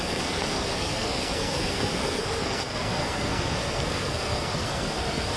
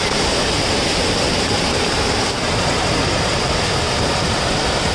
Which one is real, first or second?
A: second